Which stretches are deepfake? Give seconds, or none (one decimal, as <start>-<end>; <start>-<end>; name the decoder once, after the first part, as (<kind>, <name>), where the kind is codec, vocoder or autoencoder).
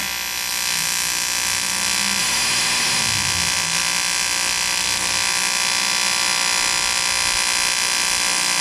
2.2-3.0 (autoencoder, DAC-VAE)